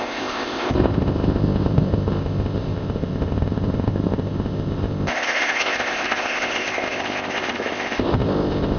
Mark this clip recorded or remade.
remade